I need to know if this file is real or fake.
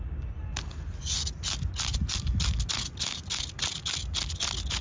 real